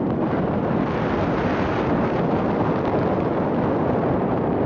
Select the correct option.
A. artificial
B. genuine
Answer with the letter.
B